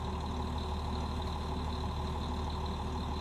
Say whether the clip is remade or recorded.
recorded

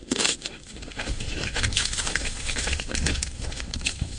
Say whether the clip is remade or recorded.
remade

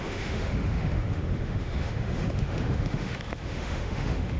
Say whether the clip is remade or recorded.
remade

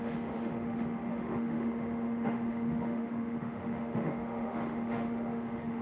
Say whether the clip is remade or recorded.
remade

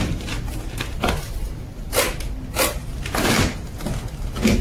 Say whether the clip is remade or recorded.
recorded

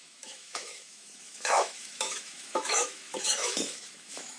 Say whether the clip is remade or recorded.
remade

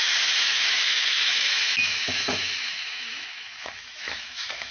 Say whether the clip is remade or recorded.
remade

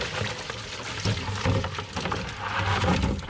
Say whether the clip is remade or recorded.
recorded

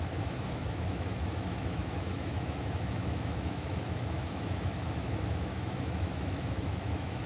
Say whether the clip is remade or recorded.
remade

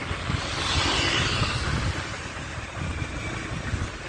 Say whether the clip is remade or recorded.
recorded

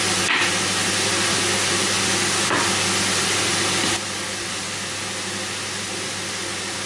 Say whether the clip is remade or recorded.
recorded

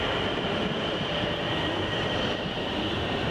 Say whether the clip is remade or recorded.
recorded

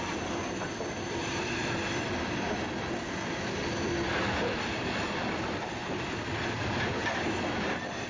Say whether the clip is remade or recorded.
recorded